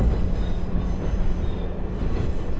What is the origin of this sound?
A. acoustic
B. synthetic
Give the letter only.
A